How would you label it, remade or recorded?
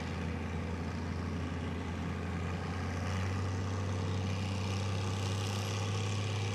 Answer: recorded